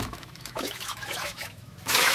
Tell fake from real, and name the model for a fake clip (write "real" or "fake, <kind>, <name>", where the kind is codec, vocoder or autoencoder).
fake, autoencoder, DAC-VAE